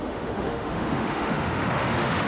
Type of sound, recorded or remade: remade